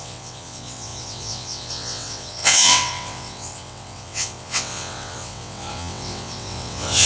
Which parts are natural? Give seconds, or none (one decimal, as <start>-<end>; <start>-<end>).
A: none